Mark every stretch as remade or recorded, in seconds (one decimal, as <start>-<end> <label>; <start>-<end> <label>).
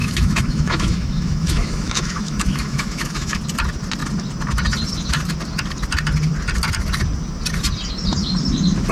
0.0-3.4 remade; 3.4-8.9 recorded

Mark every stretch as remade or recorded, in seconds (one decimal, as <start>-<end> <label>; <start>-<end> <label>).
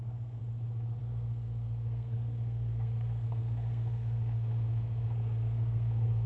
0.0-0.4 remade; 0.4-1.0 recorded; 1.0-6.3 remade